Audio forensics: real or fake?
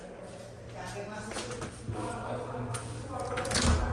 real